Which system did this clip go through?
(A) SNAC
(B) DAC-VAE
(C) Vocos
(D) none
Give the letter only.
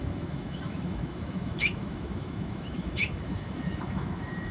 B